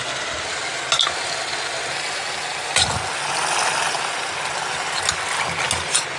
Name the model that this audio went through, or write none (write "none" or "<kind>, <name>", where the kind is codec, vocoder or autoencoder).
none